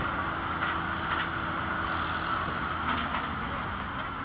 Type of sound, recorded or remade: recorded